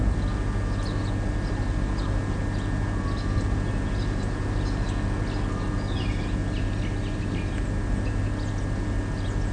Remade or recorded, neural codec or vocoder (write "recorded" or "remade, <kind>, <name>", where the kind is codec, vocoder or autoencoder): recorded